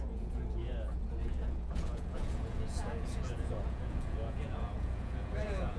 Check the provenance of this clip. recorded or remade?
remade